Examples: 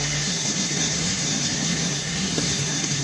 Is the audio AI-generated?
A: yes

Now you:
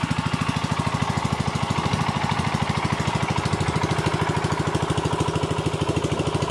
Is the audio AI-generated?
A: no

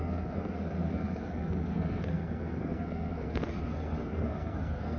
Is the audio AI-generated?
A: yes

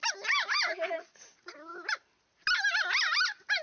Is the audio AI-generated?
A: no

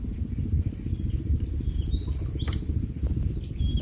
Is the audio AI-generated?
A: no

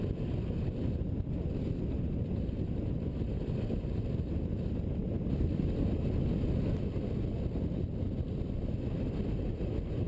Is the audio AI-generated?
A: no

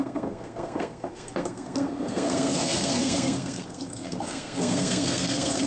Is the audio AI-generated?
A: yes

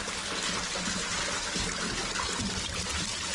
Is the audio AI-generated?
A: no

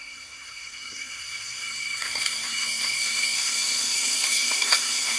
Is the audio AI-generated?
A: yes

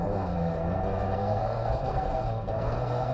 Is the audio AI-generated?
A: yes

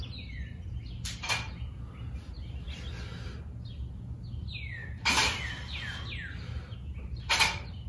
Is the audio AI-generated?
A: no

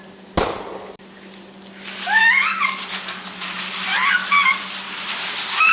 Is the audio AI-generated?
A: no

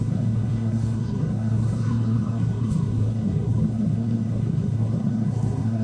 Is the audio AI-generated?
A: yes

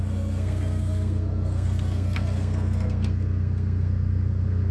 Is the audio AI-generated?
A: yes